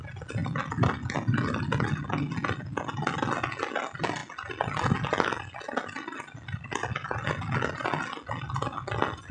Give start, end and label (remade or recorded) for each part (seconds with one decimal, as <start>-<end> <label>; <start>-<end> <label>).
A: 0.0-9.3 recorded